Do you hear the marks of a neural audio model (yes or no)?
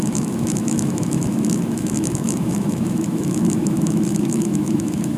yes